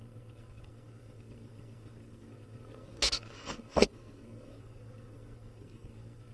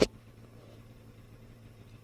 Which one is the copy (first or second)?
first